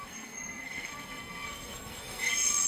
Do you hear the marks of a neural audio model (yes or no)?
yes